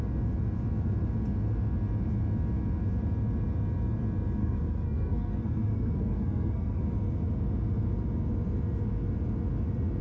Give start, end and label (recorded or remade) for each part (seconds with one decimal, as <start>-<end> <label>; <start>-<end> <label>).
0.0-4.4 recorded; 4.4-6.8 remade; 6.8-10.0 recorded